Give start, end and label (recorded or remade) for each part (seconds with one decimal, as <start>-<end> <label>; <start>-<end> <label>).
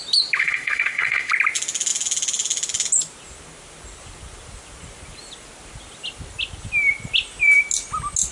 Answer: 0.0-0.4 recorded; 0.4-1.3 remade; 1.3-8.3 recorded